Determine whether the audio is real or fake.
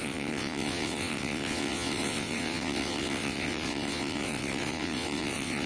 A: fake